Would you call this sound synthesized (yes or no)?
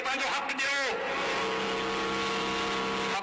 no